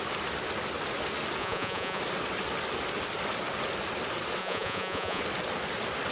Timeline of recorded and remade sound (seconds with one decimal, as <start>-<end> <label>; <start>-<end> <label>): 0.0-1.4 recorded; 1.4-2.0 remade; 2.0-4.4 recorded; 4.4-5.2 remade; 5.2-6.1 recorded